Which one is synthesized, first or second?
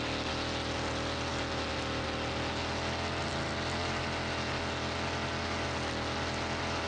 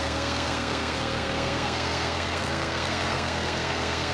second